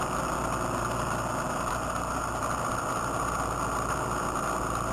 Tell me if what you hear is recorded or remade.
recorded